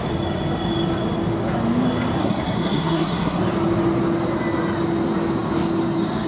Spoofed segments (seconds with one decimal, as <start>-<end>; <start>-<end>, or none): 2.2-3.4